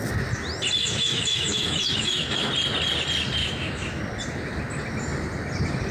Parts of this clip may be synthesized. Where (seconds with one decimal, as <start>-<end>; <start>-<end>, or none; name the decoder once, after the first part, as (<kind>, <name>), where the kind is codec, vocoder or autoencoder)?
0.8-2.5 (autoencoder, DAC-VAE); 3.4-4.0